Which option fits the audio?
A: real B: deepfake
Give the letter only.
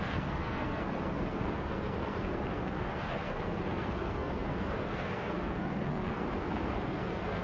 B